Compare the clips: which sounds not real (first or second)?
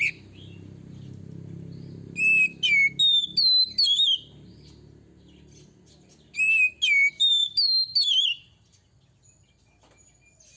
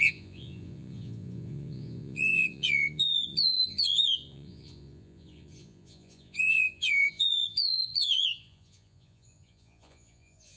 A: second